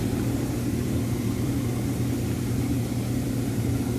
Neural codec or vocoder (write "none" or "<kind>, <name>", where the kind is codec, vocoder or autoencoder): vocoder, BigVGAN v2